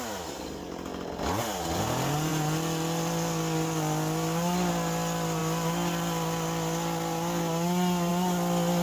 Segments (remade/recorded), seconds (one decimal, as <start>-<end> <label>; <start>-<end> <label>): 0.0-8.8 recorded